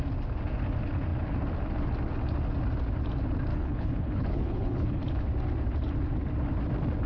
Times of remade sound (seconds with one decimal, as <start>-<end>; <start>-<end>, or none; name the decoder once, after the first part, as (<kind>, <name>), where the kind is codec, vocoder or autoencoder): 3.5-5.0 (codec, HILCodec)